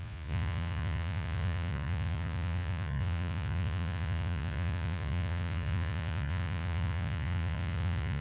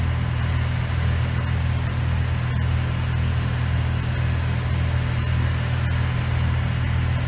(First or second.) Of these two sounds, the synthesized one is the first